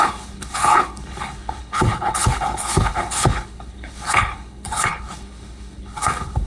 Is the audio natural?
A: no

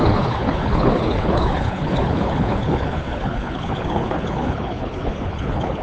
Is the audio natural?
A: no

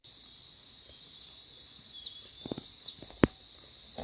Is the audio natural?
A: yes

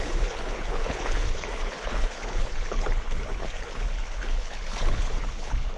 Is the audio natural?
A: no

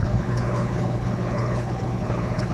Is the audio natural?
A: no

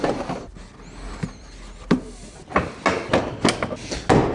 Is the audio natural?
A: yes